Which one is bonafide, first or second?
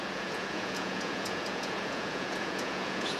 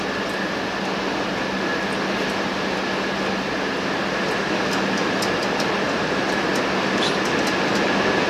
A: second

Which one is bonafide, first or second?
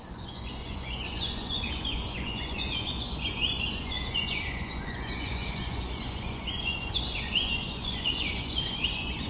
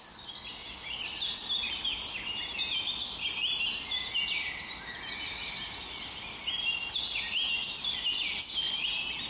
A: second